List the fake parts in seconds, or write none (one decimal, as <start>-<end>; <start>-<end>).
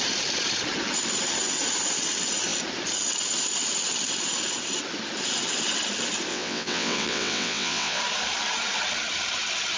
6.3-8.0